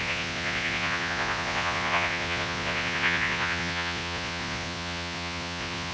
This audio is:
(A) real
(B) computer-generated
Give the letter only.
B